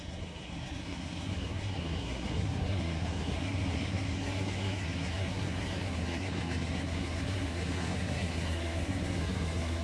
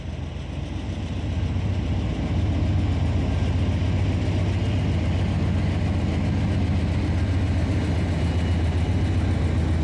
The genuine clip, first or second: second